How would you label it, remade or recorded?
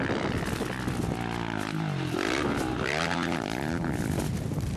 recorded